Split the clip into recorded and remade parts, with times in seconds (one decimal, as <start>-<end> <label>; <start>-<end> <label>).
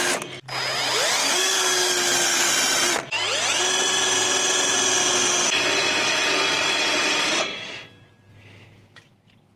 0.0-1.2 recorded; 1.2-2.5 remade; 2.5-9.6 recorded